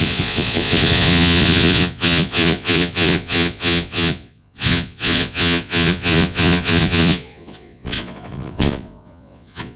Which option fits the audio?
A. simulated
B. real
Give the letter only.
A